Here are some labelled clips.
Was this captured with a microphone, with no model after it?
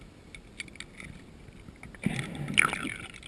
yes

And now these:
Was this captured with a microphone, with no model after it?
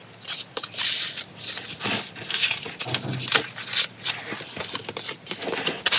yes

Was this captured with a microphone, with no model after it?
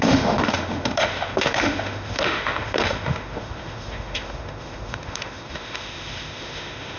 no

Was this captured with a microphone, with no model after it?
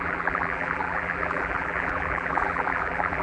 no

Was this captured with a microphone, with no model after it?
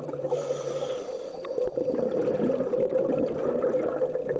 yes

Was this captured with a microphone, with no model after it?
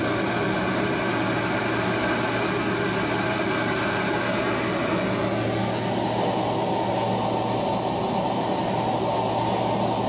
yes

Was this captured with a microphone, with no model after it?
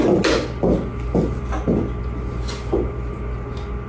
yes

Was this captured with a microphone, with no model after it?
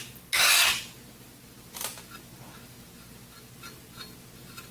yes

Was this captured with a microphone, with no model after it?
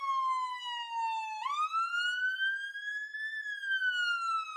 yes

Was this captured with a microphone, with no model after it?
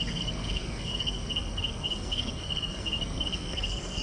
no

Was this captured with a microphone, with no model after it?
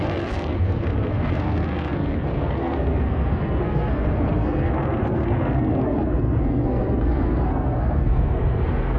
no